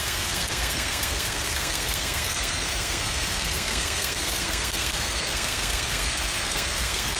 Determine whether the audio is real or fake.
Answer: fake